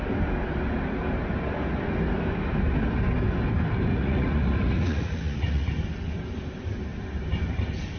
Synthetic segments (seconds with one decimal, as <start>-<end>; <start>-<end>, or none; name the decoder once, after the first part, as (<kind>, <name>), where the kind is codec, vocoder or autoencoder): 3.9-5.7 (vocoder, Vocos)